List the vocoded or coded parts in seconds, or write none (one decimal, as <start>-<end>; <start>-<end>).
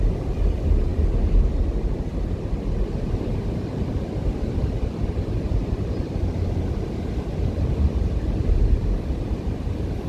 none